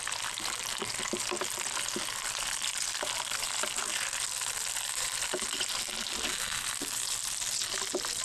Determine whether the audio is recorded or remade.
recorded